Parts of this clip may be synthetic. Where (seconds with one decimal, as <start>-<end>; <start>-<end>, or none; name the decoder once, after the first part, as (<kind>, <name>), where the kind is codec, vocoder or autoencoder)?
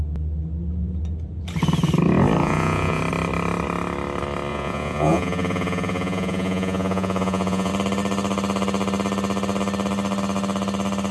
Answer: 2.4-3.0 (vocoder, Vocos); 4.5-7.7